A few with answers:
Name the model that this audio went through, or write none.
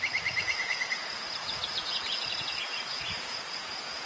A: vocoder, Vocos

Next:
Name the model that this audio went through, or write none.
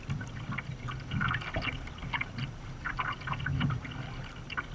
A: none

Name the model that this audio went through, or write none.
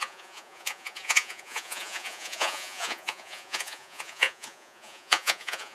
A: vocoder, Vocos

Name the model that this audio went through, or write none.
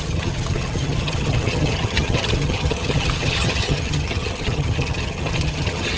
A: vocoder, HiFi-GAN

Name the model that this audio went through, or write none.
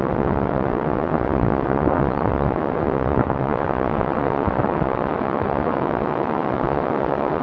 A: vocoder, WaveNeXt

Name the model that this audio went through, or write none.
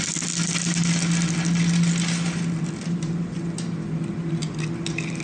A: none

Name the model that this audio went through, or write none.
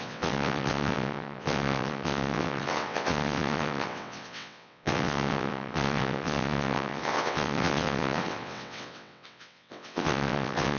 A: vocoder, WaveNeXt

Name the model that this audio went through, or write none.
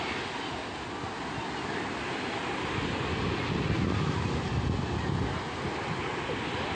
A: none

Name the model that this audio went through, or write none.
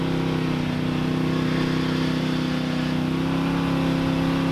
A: none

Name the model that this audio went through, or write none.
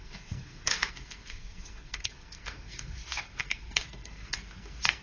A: codec, SNAC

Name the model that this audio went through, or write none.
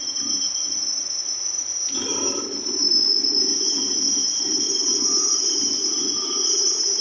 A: none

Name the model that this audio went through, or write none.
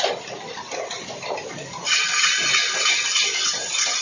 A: none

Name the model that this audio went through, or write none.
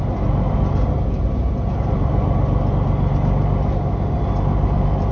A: none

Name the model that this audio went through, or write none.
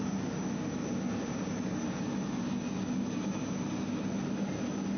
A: none